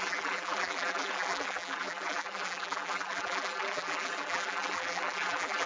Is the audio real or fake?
fake